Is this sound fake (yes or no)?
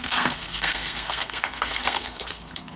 yes